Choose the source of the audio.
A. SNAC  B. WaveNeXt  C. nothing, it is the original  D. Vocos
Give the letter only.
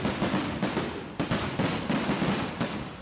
C